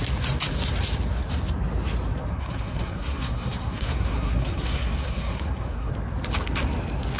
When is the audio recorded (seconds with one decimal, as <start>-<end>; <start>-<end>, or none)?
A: 0.0-2.3; 5.9-7.2